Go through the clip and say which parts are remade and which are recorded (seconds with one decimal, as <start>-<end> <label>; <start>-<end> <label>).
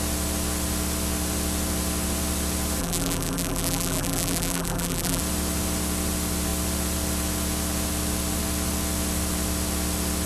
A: 0.0-2.8 recorded; 2.8-5.2 remade; 5.2-10.3 recorded